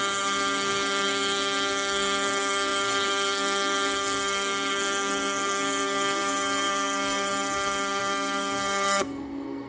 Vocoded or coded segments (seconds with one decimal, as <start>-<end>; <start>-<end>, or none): 0.0-9.7